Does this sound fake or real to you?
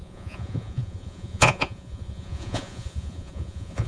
fake